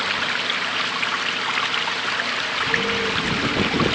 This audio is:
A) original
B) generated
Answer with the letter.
A